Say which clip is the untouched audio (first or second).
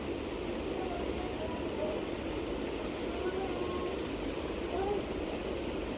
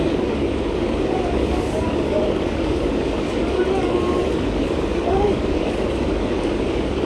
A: first